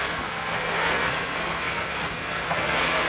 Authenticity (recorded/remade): remade